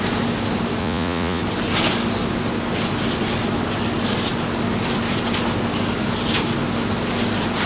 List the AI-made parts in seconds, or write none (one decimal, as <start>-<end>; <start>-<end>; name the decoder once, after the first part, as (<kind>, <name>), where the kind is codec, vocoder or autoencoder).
0.8-1.4 (vocoder, Vocos)